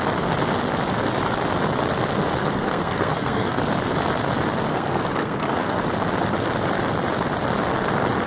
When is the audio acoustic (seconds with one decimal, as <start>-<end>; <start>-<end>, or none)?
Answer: 0.0-2.4; 3.6-4.7; 5.8-8.3